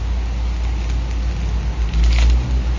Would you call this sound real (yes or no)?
yes